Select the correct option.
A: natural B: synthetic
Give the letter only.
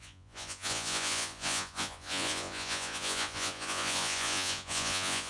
B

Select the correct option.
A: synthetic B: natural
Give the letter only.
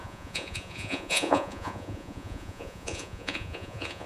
A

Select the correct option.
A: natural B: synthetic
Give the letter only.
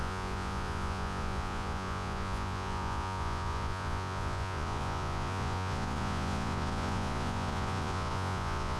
B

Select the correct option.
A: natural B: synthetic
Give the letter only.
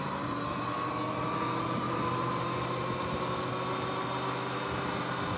A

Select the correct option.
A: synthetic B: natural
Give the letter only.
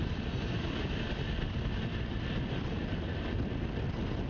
B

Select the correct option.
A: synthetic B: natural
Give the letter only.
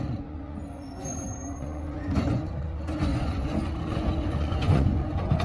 A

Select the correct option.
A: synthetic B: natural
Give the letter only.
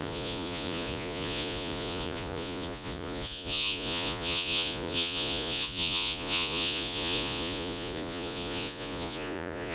A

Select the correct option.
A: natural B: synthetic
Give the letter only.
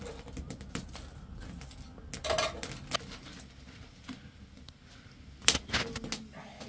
A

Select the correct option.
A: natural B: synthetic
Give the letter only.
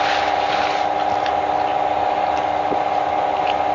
A